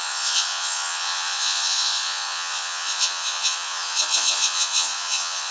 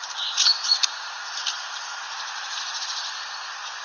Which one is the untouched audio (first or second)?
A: second